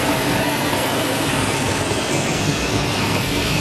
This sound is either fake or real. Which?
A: fake